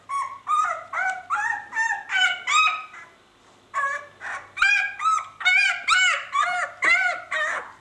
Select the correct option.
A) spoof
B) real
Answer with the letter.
A